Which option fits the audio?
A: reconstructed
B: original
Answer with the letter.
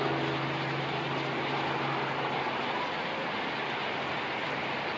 B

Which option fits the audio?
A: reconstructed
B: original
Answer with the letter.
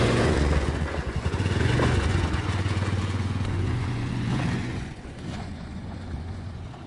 A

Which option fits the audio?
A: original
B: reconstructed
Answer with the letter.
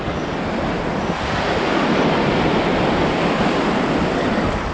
A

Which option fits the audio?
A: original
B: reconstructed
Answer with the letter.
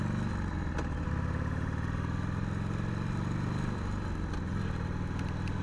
A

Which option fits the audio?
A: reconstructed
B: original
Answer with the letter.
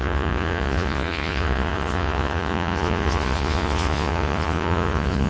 A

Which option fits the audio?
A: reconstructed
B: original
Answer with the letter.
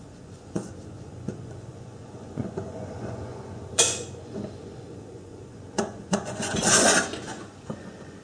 A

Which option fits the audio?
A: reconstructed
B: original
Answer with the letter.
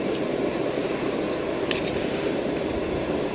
B